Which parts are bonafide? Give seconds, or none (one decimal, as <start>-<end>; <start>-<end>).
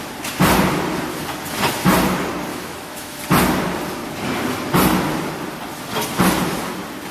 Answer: 0.0-2.5; 3.2-7.1